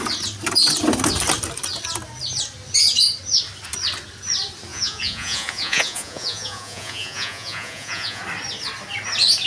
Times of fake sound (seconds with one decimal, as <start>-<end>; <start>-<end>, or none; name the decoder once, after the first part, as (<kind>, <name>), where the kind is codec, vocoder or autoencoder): 4.7-8.2 (vocoder, Vocos)